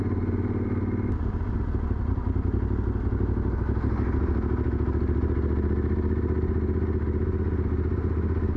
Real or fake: real